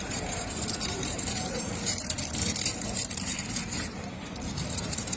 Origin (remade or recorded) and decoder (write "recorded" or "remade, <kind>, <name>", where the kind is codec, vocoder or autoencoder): remade, vocoder, BigVGAN v2